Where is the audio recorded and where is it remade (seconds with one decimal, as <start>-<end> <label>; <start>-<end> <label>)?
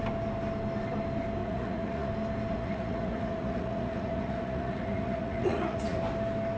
0.0-1.4 recorded; 1.4-2.1 remade; 2.1-2.5 recorded; 2.5-6.0 remade; 6.0-6.6 recorded